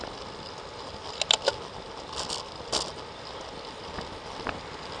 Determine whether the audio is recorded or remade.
recorded